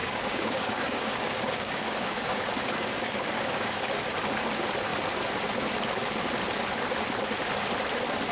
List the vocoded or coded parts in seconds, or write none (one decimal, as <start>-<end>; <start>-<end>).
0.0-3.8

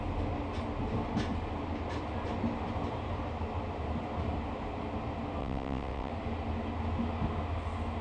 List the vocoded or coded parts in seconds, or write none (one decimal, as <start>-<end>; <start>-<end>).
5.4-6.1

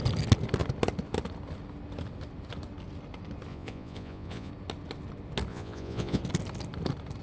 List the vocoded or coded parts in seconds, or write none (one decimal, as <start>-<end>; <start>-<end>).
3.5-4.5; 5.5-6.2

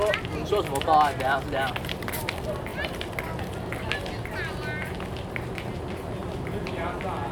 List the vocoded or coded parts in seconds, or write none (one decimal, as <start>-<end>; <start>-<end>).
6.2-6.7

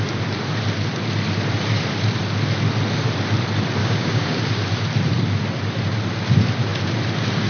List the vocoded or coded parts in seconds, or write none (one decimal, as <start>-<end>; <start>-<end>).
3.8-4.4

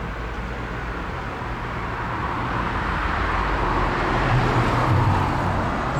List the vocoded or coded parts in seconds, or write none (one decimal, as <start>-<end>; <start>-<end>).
2.2-4.5

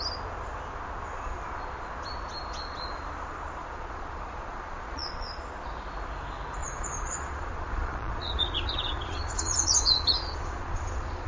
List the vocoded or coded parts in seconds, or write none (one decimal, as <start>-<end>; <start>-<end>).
3.6-5.4; 6.6-11.3